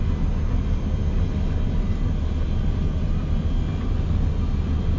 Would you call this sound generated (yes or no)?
no